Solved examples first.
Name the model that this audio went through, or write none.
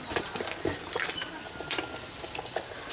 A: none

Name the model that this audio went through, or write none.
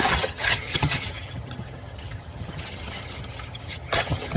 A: vocoder, HiFi-GAN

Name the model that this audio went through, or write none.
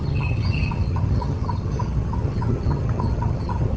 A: vocoder, HiFi-GAN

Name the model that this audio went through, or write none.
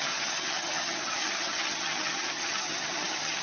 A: vocoder, HiFi-GAN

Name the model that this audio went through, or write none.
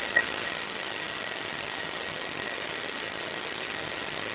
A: vocoder, HiFi-GAN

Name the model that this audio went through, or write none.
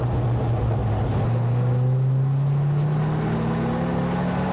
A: none